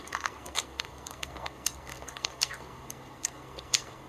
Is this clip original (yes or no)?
no